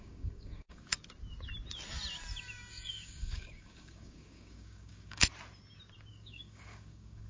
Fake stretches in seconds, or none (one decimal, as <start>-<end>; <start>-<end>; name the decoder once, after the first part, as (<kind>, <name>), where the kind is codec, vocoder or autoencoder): 0.0-0.9 (codec, DAC); 2.7-5.3; 6.1-7.3